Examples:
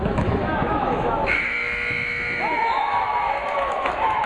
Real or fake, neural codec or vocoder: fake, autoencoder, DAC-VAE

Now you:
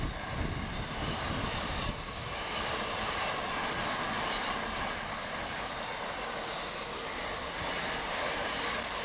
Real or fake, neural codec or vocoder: real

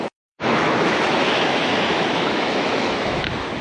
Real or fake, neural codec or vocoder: fake, autoencoder, DAC-VAE